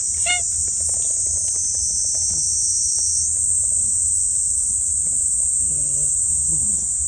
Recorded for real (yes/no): yes